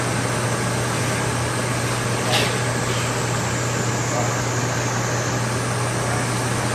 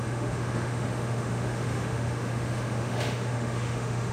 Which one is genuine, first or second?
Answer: first